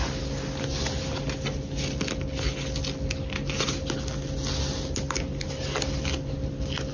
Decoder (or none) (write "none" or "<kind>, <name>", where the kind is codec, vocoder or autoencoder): none